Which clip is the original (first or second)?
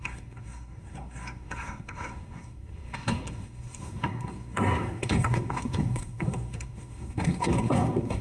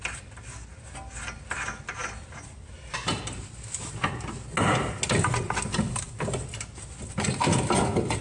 second